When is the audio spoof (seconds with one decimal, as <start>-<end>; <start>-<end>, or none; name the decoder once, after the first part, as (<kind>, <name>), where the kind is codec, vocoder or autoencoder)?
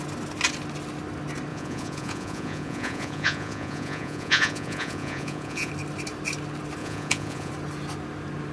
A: 1.5-5.7 (vocoder, Vocos); 6.8-7.5